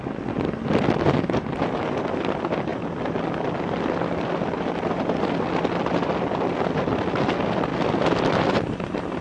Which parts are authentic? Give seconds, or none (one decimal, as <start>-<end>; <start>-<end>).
0.0-9.2